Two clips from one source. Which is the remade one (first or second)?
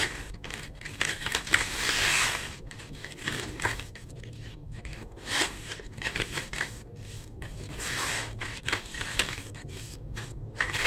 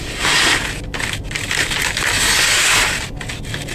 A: first